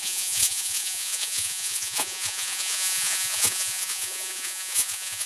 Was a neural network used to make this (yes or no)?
yes